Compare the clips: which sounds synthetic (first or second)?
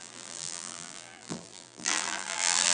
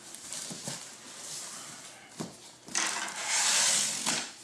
first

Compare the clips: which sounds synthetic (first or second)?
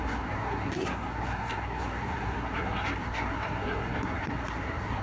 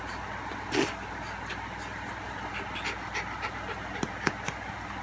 first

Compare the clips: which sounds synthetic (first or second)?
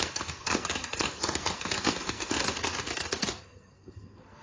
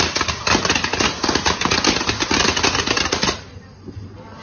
first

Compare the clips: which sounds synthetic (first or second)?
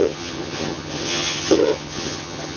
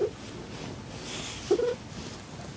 first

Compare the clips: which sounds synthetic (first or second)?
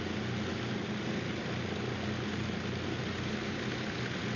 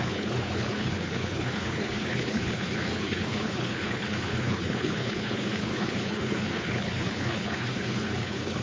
second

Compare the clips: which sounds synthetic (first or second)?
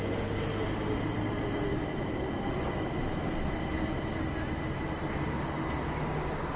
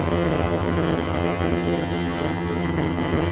second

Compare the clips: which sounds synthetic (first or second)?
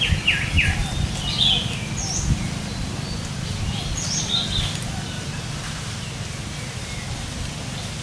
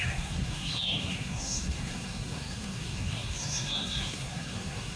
second